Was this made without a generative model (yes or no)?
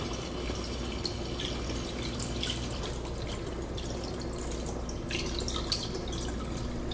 yes